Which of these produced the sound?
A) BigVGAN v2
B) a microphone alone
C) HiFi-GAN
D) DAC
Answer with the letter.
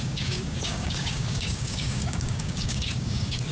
D